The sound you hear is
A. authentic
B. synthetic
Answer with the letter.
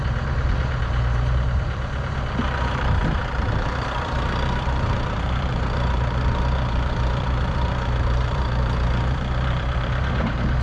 B